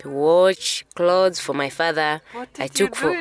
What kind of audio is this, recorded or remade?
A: recorded